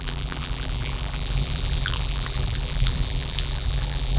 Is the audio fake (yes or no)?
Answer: yes